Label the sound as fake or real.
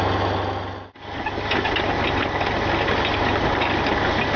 real